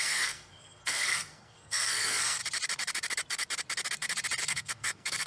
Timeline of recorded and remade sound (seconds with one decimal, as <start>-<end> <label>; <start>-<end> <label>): 0.0-2.4 remade; 2.4-4.4 recorded; 4.4-5.3 remade